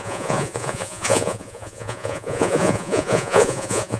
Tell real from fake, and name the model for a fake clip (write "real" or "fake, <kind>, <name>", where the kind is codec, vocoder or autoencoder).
fake, vocoder, Vocos